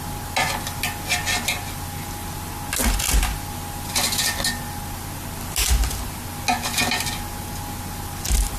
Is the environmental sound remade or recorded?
recorded